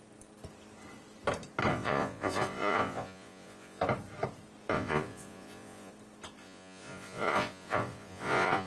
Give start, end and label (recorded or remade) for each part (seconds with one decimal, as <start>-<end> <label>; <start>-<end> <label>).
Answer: 0.0-1.7 recorded; 1.7-3.8 remade; 3.8-4.7 recorded; 4.7-5.9 remade; 5.9-6.4 recorded; 6.4-8.7 remade